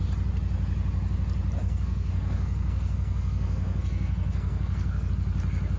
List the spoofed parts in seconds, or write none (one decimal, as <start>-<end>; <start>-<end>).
1.6-5.1